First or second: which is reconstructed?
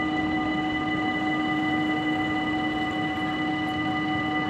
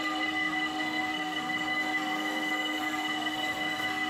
second